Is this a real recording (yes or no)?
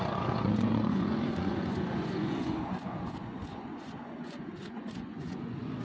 no